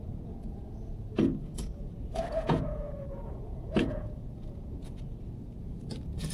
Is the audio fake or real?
fake